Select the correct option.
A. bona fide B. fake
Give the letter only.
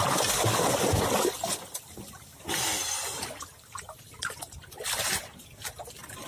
A